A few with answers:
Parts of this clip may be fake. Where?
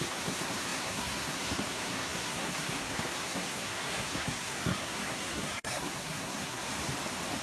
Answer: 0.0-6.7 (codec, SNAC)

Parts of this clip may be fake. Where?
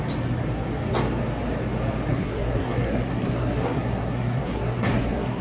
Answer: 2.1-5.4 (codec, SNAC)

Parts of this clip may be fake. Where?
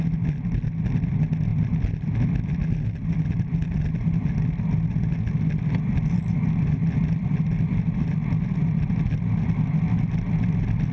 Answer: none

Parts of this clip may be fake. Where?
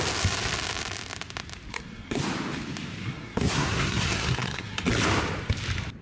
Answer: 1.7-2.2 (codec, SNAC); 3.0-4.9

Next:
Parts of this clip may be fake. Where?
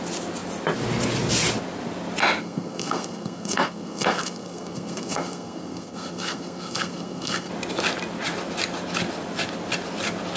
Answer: 2.4-7.5 (codec, SNAC)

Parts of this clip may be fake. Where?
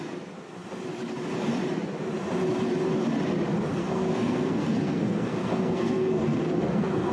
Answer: 3.7-7.1 (codec, SNAC)